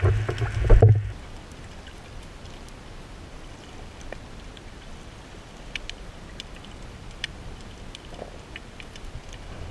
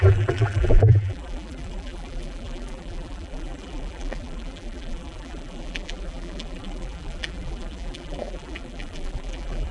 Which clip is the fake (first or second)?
second